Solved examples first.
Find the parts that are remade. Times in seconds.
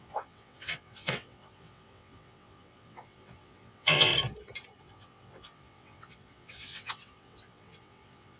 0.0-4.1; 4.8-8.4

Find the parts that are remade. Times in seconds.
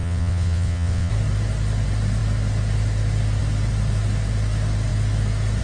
0.0-1.1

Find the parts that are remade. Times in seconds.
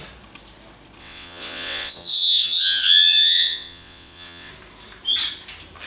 1.0-4.5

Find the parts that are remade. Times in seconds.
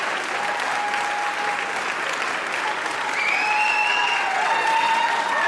3.9-5.0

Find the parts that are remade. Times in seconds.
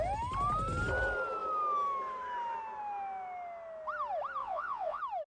4.4-5.0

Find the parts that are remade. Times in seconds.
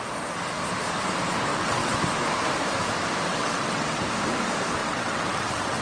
1.5-2.0; 3.3-4.0; 4.8-5.8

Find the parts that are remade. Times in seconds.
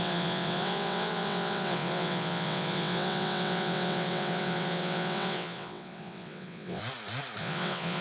0.0-6.8; 7.4-8.0